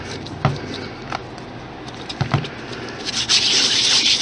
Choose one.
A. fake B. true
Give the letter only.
A